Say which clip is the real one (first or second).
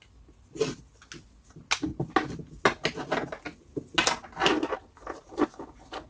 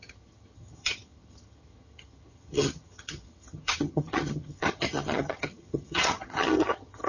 first